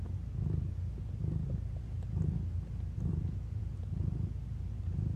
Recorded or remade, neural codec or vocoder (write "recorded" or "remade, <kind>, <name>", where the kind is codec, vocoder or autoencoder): recorded